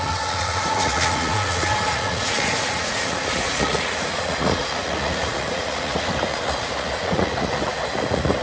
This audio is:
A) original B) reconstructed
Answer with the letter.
B